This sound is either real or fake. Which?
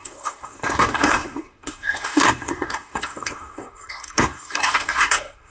fake